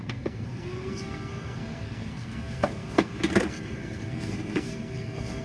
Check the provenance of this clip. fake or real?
fake